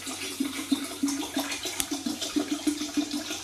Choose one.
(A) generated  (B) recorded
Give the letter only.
A